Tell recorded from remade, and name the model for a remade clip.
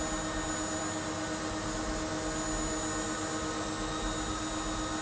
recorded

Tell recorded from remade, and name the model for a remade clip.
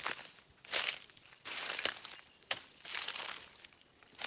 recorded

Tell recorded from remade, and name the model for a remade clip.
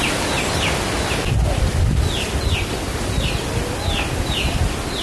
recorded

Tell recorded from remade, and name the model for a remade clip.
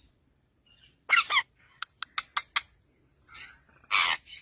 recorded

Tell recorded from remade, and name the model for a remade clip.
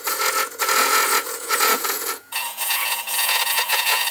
remade, vocoder, Vocos